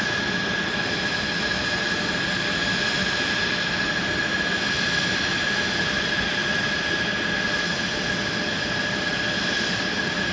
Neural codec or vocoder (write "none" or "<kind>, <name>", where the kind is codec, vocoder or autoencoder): none